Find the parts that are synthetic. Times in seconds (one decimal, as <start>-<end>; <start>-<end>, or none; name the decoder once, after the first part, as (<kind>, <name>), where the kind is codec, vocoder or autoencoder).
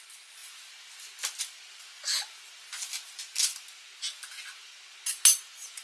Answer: none